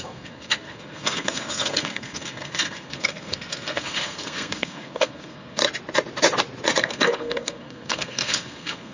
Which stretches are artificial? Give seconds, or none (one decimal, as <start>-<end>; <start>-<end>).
0.0-5.6; 6.8-8.9